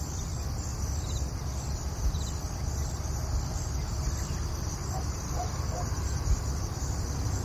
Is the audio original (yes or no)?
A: yes